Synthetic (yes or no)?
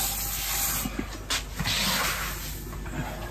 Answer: no